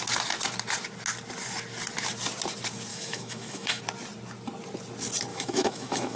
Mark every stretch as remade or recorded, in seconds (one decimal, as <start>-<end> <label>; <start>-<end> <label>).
0.0-2.9 recorded; 2.9-3.8 remade; 3.8-5.3 recorded; 5.3-6.2 remade